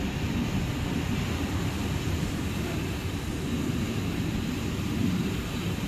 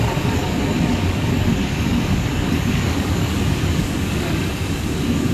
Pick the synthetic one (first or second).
second